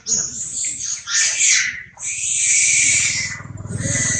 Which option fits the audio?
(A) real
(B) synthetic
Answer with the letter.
A